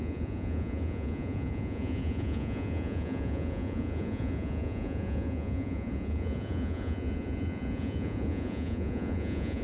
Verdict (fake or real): fake